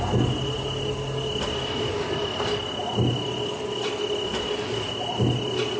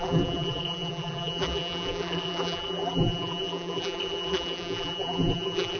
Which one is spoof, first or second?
second